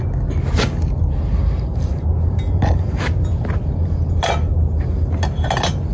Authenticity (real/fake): real